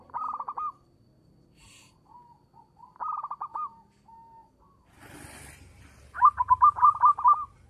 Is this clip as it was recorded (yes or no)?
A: yes